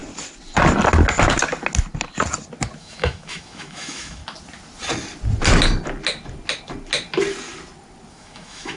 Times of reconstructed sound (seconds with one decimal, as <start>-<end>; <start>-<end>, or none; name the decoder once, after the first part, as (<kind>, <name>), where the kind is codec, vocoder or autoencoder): 2.8-4.2 (autoencoder, DAC-VAE); 8.1-8.8